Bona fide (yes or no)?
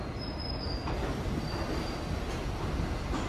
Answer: yes